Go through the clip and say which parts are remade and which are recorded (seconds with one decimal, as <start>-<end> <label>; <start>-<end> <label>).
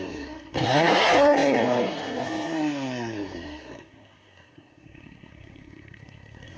0.0-6.6 remade